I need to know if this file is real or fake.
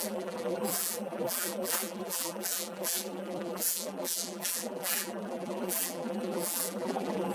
fake